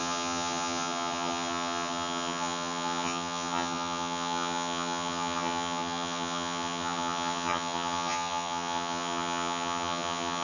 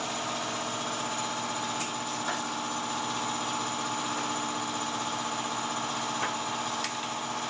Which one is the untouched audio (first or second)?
second